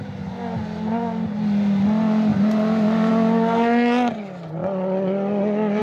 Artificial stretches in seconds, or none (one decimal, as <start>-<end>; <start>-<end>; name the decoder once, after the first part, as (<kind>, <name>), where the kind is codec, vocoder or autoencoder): none